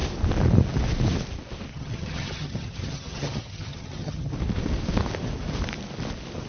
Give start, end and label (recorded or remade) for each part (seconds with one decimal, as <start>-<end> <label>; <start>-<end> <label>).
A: 0.0-1.7 recorded; 1.7-4.3 remade; 4.3-6.5 recorded